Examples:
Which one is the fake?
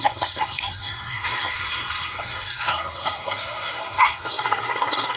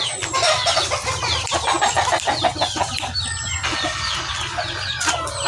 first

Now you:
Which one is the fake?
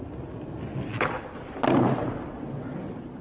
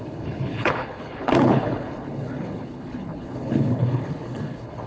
second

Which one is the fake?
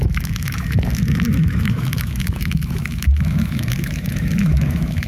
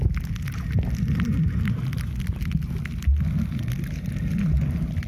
first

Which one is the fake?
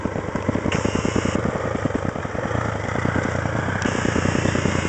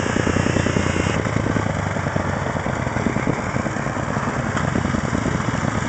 first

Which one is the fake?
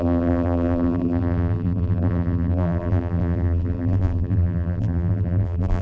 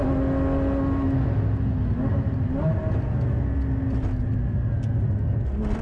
first